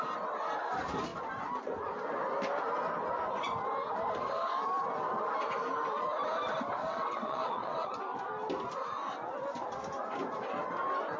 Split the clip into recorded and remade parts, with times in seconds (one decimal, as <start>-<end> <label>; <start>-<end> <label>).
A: 0.0-6.8 recorded; 6.8-8.0 remade; 8.0-11.2 recorded